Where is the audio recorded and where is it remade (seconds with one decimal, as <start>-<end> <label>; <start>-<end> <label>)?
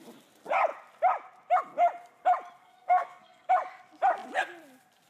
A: 0.0-2.6 recorded; 2.6-3.5 remade; 3.5-5.1 recorded